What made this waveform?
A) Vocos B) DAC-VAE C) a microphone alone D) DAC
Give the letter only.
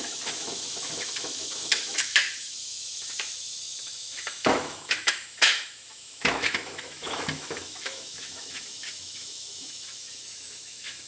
B